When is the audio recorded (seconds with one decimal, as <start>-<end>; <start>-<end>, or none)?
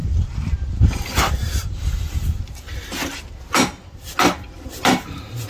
3.3-5.5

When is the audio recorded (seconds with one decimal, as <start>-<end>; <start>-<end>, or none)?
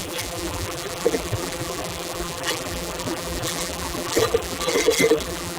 none